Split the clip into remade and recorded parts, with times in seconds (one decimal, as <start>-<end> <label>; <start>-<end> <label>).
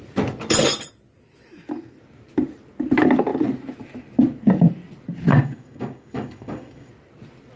0.0-5.3 recorded; 5.3-6.9 remade; 6.9-7.6 recorded